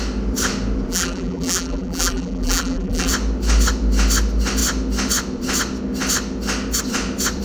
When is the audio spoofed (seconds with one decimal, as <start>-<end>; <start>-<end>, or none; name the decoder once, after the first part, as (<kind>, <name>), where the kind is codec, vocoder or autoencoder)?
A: 0.9-3.1 (vocoder, BigVGAN v2)